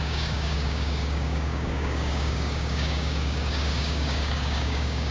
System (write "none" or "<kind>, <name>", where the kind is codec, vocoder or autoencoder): codec, DAC